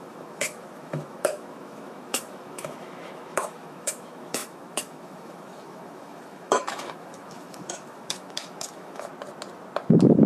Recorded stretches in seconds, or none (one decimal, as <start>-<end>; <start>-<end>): 9.1-10.3